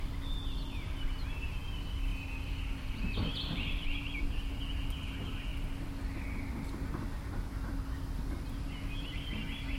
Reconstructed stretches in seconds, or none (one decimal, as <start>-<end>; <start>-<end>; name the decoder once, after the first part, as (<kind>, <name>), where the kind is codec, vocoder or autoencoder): none

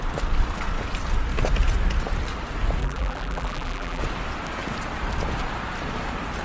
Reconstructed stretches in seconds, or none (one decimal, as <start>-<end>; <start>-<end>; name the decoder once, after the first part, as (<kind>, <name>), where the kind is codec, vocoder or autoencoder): 2.8-4.0 (vocoder, BigVGAN v2)

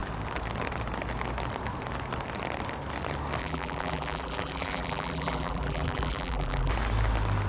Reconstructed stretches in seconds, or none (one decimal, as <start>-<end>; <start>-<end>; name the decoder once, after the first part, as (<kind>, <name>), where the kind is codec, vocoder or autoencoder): 3.4-6.7 (vocoder, BigVGAN v2)

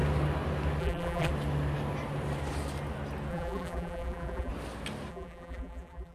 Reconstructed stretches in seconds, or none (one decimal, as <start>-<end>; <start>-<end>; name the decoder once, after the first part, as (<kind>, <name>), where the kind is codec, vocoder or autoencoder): 0.8-1.3 (vocoder, BigVGAN v2); 3.3-4.5; 5.1-6.1

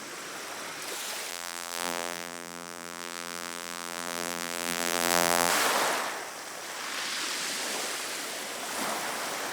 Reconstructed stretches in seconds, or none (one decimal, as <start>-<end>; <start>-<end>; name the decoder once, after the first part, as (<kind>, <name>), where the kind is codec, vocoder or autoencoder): 1.3-5.5 (vocoder, BigVGAN v2)

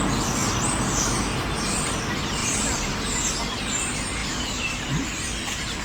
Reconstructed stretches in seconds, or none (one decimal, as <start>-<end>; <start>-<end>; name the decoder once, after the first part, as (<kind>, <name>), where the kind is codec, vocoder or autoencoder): 2.4-3.3 (vocoder, BigVGAN v2); 4.2-4.9

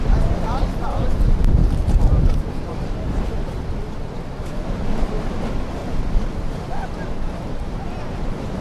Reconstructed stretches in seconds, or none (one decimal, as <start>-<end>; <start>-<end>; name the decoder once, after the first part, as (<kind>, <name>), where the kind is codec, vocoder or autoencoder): 0.0-5.8 (vocoder, BigVGAN v2); 6.3-8.6

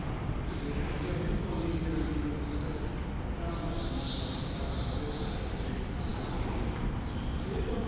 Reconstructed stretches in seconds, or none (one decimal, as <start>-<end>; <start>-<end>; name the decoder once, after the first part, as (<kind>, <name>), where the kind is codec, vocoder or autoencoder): 6.1-7.9 (vocoder, BigVGAN v2)